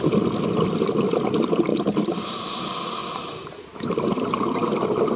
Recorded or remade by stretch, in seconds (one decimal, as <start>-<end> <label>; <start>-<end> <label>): 0.0-1.7 recorded; 1.7-2.6 remade; 2.6-3.0 recorded; 3.0-3.9 remade; 3.9-5.2 recorded